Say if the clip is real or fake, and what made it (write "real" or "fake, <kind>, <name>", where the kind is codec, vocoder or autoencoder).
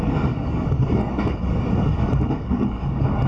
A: fake, codec, DAC